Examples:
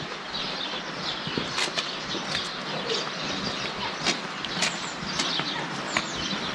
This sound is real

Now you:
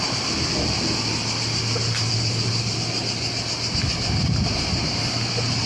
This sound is real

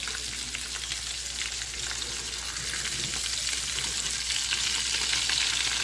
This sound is real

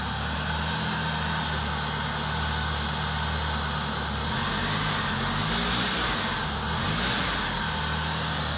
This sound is real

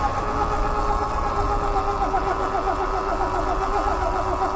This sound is real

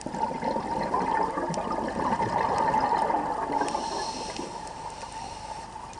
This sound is real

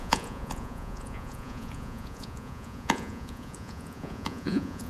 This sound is fake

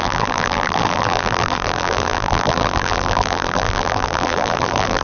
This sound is fake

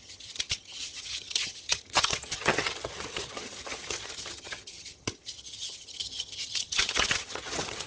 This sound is fake